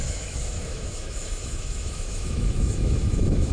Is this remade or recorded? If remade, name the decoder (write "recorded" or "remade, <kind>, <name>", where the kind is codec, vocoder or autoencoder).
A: remade, autoencoder, DAC-VAE